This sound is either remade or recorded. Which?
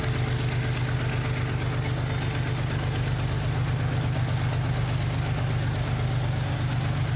recorded